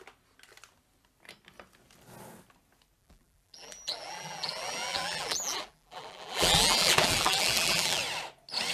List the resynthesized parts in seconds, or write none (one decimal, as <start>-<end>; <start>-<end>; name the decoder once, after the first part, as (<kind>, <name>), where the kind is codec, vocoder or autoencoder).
3.0-8.0 (vocoder, BigVGAN v2)